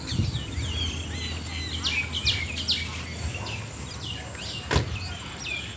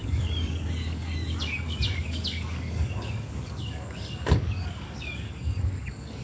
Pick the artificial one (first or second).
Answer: second